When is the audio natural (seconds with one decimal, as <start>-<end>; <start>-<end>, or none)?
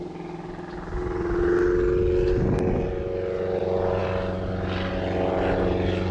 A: 0.0-6.1